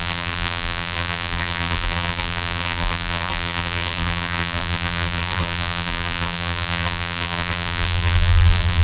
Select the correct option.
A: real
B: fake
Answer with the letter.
B